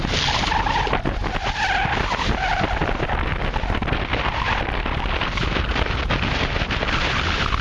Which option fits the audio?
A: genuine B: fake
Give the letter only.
A